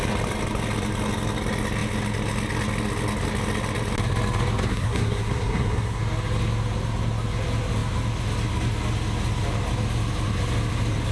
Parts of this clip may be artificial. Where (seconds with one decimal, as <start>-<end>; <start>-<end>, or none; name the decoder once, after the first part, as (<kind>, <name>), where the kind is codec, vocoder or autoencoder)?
4.7-6.0 (codec, SNAC)